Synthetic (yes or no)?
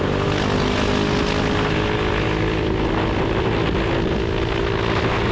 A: no